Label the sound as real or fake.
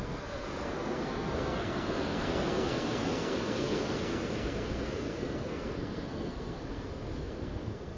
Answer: fake